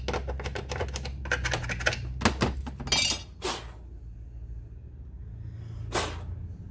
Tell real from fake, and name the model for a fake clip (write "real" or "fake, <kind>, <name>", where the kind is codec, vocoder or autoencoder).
real